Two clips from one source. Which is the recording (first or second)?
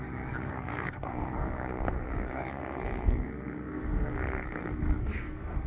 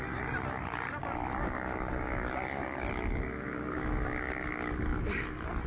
second